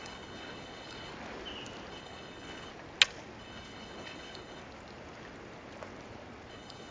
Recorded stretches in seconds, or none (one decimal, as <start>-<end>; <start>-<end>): 1.1-1.9; 2.7-3.4; 4.6-6.5